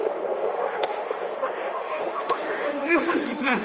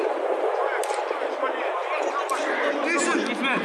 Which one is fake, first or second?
first